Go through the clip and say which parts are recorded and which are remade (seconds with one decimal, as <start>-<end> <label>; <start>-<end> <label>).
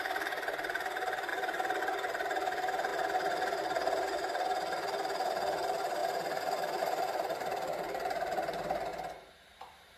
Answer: 0.0-2.9 remade; 2.9-3.6 recorded; 3.6-6.0 remade; 6.0-6.8 recorded; 6.8-8.9 remade; 8.9-9.6 recorded; 9.6-10.0 remade